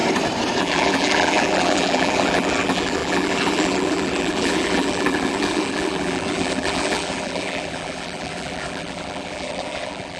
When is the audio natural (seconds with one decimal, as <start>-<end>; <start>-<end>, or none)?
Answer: 0.0-0.6